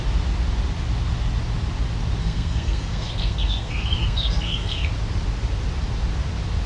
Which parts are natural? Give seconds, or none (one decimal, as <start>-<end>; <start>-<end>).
0.0-2.2; 4.9-6.7